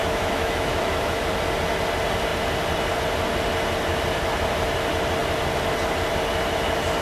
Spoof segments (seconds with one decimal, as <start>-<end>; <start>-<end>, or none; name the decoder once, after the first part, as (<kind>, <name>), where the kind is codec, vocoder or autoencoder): 0.0-1.2 (autoencoder, DAC-VAE)